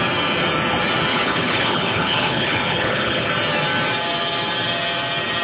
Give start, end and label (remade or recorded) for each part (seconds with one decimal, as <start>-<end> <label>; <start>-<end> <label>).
0.0-1.1 recorded; 1.1-3.3 remade; 3.3-5.4 recorded